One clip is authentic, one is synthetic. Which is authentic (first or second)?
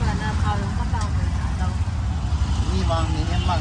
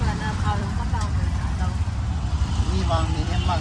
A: first